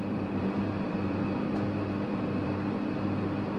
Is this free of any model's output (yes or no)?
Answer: no